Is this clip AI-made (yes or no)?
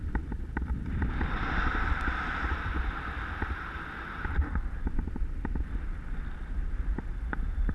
no